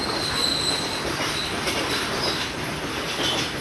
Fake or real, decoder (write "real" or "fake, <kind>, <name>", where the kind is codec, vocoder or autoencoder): real